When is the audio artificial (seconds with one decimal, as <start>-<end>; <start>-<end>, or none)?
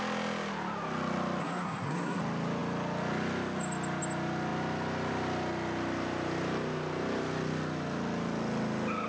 1.4-2.2